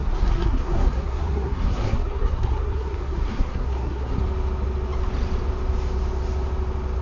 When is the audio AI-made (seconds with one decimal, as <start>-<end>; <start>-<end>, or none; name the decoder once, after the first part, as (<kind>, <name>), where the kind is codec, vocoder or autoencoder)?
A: 0.0-4.2 (codec, SNAC)